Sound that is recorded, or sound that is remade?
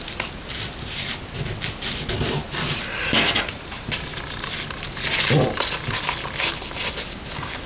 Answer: recorded